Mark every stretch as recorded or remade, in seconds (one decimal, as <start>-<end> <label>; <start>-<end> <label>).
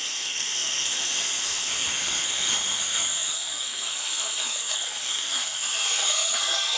0.0-6.8 remade